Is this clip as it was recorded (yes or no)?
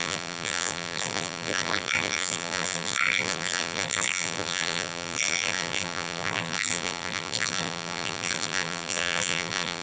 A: no